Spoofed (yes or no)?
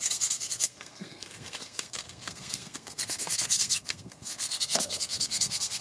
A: yes